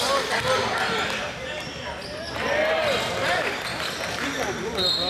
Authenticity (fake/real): real